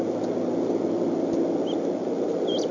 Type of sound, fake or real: real